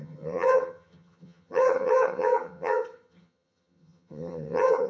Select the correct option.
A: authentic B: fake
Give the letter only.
B